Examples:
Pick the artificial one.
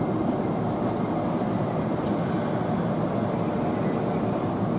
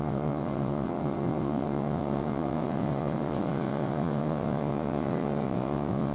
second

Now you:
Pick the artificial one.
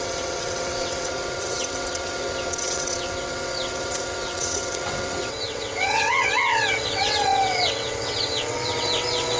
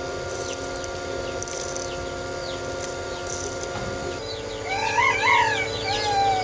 first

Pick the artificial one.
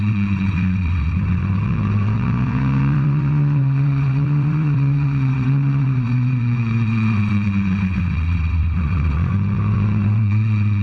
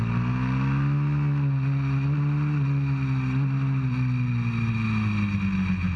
first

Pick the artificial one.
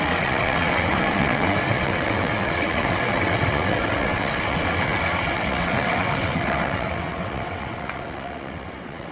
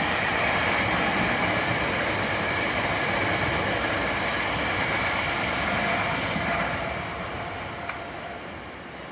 first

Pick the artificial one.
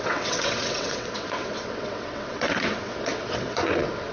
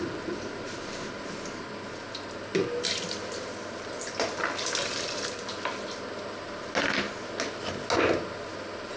first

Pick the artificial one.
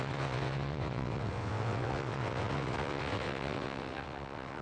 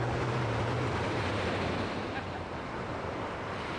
first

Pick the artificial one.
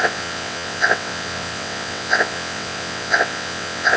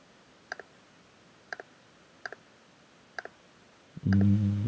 first